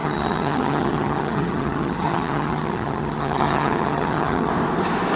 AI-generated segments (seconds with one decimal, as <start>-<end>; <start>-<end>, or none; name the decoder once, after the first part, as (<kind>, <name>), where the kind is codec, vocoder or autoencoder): 0.0-4.5 (vocoder, HiFi-GAN)

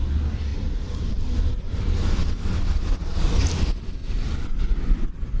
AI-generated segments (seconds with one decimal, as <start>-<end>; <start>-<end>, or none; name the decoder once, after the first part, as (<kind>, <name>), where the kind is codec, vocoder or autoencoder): 0.5-1.4 (vocoder, BigVGAN v2); 4.0-4.6

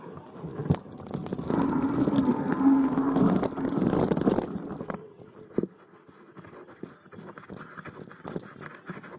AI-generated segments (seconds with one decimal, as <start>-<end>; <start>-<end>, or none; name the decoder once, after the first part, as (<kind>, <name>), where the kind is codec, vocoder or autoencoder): 2.0-3.2 (codec, SNAC)

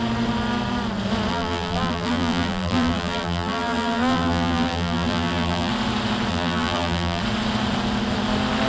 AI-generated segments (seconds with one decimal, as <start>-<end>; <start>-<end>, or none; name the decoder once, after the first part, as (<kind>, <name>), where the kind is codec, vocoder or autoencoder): 1.3-5.7 (vocoder, BigVGAN v2); 6.3-7.2

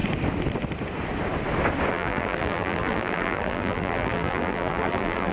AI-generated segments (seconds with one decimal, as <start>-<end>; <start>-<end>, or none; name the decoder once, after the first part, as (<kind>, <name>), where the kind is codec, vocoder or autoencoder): 1.9-5.3 (vocoder, BigVGAN v2)

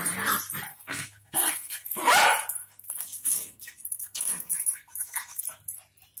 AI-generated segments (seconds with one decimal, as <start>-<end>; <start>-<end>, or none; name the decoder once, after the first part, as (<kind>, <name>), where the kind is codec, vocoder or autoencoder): 0.7-2.0 (codec, SNAC); 2.6-5.4

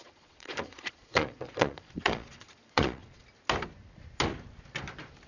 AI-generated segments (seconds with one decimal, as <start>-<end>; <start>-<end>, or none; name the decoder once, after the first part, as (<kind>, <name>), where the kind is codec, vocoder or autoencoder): 0.0-3.2 (vocoder, Vocos)

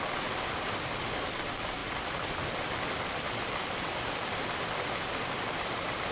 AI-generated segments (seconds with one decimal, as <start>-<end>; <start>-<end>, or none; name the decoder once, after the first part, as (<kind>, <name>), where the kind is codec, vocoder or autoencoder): none